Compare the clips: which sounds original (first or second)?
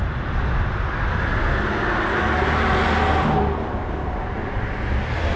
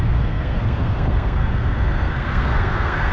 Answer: first